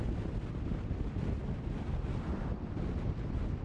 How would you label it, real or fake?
real